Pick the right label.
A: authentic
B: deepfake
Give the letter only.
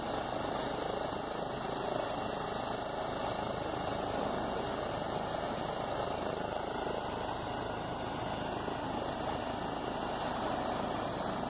A